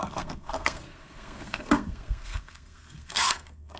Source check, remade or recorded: remade